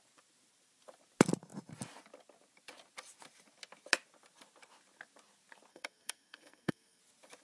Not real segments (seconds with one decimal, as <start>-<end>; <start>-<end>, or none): 5.7-7.0